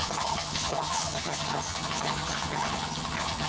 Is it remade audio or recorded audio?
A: remade